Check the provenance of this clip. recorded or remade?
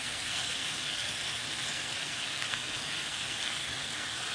remade